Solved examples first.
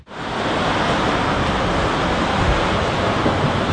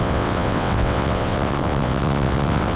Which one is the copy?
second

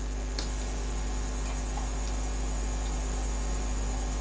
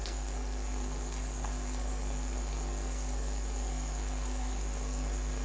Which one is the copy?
second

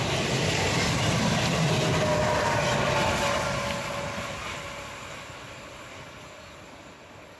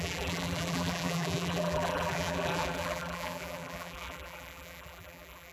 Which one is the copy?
second